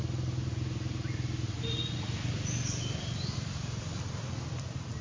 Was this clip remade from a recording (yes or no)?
no